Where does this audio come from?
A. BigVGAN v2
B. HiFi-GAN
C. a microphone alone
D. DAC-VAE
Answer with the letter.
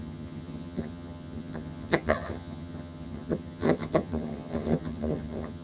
B